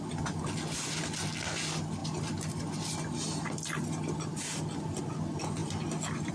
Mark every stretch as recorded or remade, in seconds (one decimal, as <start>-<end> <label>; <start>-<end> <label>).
0.0-2.0 recorded; 2.0-5.0 remade; 5.0-6.3 recorded

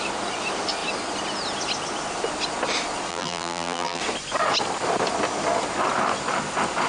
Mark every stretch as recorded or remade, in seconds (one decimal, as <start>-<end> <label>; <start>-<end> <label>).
0.0-3.1 recorded; 3.1-4.0 remade; 4.0-6.9 recorded